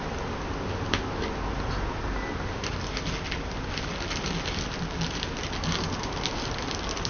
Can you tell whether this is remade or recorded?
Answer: recorded